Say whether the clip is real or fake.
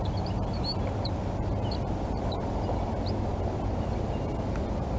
real